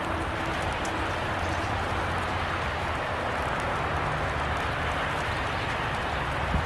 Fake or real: real